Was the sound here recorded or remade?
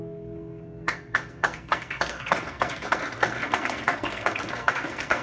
remade